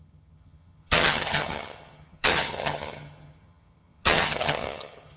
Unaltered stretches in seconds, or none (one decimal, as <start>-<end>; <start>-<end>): none